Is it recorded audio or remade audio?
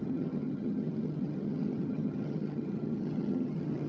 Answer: remade